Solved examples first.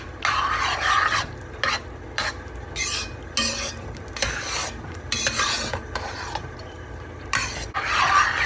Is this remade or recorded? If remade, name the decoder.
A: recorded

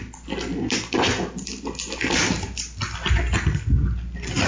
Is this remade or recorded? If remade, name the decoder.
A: recorded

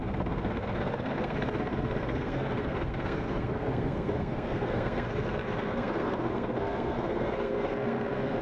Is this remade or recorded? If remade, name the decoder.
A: remade, codec, SNAC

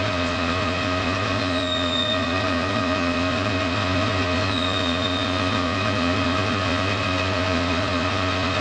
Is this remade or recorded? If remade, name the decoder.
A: remade, vocoder, Vocos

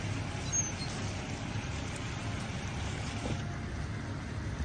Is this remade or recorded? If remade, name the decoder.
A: recorded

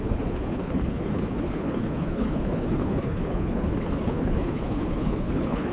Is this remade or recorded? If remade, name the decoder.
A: remade, codec, HILCodec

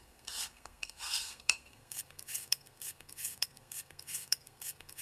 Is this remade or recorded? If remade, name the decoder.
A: remade, codec, SNAC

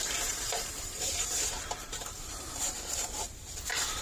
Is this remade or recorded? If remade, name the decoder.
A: remade, vocoder, BigVGAN v2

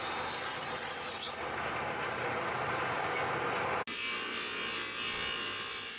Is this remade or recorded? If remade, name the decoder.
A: recorded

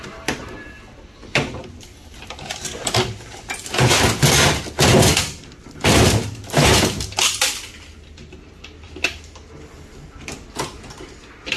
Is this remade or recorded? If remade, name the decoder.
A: recorded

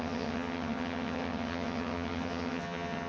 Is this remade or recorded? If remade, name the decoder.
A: remade, vocoder, HiFi-GAN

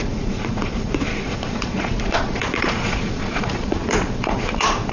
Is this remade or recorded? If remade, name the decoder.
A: remade, vocoder, Vocos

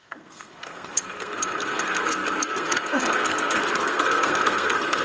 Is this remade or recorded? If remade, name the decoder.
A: remade, codec, SNAC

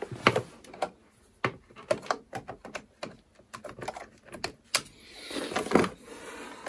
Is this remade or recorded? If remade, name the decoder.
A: recorded